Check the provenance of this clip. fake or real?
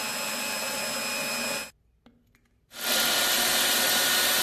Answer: real